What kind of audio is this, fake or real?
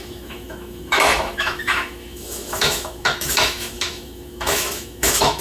fake